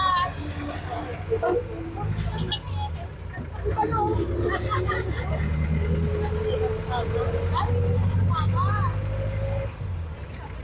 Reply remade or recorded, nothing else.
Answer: recorded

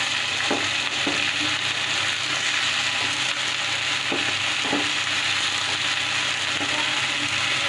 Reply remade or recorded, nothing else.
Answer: recorded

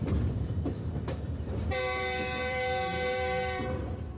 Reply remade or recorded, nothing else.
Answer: remade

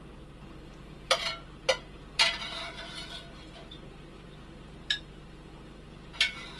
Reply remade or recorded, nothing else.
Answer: remade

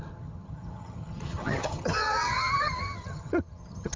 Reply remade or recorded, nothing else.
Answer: remade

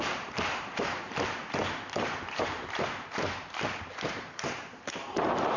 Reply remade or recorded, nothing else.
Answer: remade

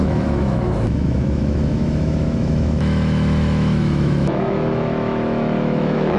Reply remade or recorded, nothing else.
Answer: remade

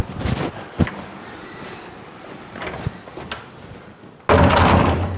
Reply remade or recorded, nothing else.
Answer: recorded